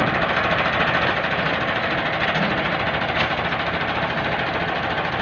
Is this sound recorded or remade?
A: recorded